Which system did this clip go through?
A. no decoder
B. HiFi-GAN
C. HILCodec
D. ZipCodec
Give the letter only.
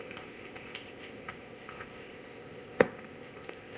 D